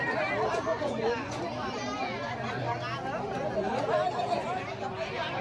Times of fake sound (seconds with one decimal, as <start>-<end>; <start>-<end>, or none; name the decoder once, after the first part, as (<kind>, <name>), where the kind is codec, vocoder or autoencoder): 0.7-1.4 (vocoder, Vocos)